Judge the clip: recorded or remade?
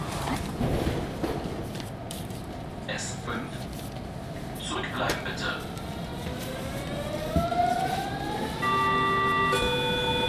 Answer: recorded